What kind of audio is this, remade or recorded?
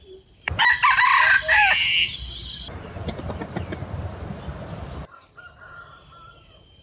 remade